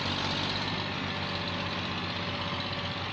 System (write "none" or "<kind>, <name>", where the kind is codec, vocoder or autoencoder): none